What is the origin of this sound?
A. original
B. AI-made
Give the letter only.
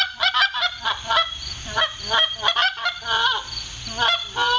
B